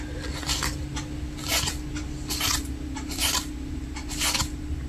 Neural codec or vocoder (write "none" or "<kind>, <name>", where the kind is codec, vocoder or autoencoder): none